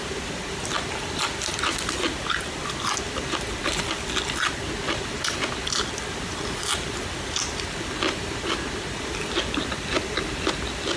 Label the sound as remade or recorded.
recorded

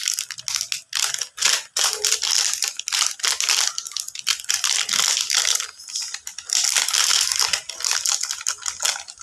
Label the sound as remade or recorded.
recorded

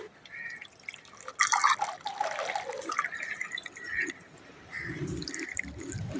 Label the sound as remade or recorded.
recorded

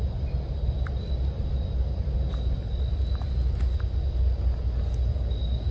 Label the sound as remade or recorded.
recorded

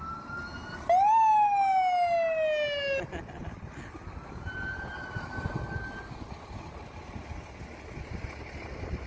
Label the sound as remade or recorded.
recorded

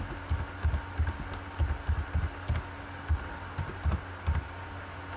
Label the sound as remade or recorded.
recorded